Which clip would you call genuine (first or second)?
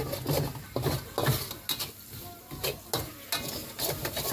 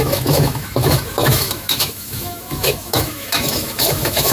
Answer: first